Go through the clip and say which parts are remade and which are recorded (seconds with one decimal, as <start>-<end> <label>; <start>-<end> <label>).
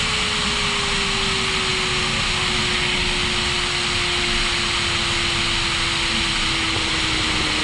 0.0-7.6 recorded